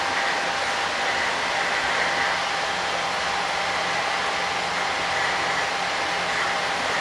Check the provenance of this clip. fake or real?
real